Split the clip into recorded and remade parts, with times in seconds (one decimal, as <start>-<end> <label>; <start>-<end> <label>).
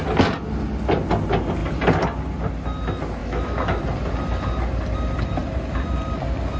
0.0-3.2 recorded; 3.2-3.8 remade; 3.8-6.6 recorded